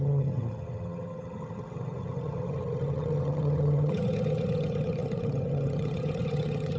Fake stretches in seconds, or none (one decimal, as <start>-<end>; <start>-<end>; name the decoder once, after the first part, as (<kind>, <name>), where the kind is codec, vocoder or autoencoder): 0.0-6.8 (vocoder, HiFi-GAN)